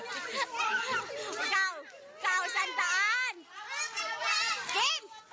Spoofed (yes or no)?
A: no